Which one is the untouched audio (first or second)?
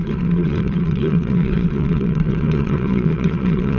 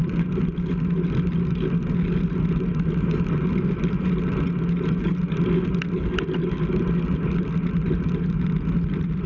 second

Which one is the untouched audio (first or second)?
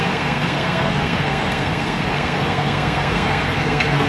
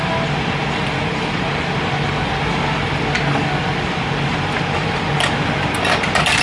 second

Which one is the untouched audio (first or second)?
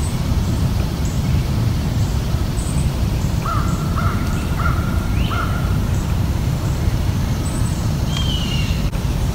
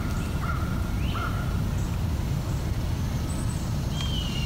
second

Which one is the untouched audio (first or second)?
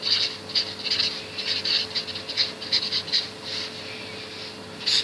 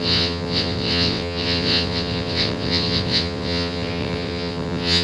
first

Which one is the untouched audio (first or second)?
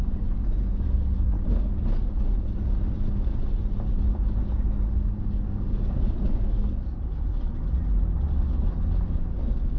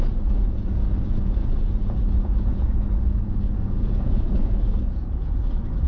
first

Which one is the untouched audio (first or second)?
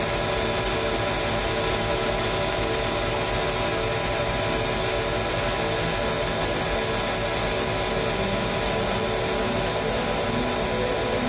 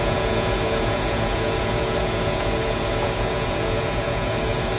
first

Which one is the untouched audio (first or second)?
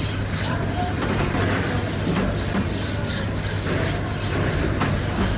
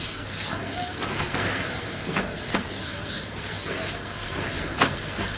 first